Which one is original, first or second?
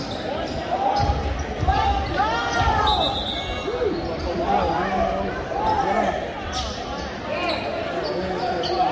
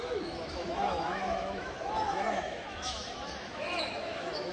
first